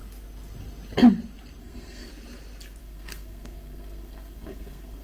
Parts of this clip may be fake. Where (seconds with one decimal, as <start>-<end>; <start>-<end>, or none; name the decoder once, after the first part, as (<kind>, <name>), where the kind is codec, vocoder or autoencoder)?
1.6-2.1 (codec, SNAC); 2.8-5.0

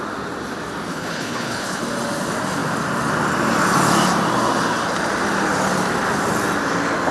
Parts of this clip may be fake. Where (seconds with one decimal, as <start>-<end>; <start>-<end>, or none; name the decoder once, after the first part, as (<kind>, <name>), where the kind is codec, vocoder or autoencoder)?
0.9-1.8 (codec, HILCodec)

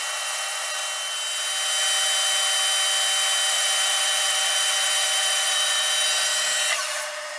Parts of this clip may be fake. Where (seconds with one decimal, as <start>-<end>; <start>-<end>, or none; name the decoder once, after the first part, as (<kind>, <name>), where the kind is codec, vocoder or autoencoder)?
0.0-0.8 (vocoder, BigVGAN v2); 3.5-6.3; 6.9-7.4

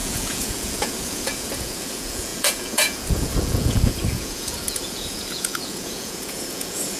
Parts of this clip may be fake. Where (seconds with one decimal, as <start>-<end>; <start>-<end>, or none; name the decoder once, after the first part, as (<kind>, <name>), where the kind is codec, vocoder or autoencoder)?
0.0-7.0 (vocoder, Vocos)

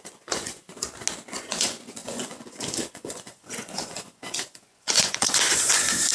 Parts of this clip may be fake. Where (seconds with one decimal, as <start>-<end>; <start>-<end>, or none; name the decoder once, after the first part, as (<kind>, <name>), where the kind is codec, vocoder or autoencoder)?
0.0-0.7 (vocoder, Vocos); 1.3-6.1

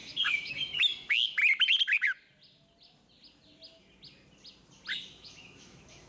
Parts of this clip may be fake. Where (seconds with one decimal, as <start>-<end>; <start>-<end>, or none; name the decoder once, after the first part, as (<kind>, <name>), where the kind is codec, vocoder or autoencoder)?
0.0-1.4 (autoencoder, DAC-VAE); 5.1-6.1